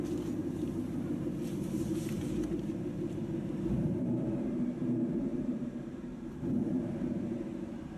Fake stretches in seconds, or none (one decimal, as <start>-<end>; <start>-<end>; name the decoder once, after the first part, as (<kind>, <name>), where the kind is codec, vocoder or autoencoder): 0.0-8.0 (vocoder, BigVGAN v2)